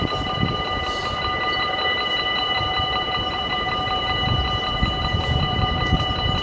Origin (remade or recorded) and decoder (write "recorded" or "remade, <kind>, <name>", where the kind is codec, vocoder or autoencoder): remade, vocoder, BigVGAN v2